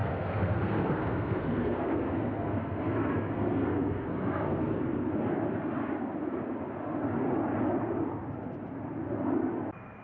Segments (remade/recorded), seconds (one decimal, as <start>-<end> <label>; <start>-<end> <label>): 0.0-5.1 remade; 5.1-10.0 recorded